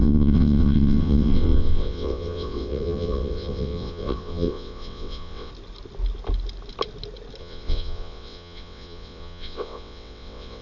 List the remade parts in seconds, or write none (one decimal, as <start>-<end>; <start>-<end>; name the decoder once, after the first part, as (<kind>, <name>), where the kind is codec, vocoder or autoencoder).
0.0-5.5 (vocoder, WaveNeXt); 7.4-10.6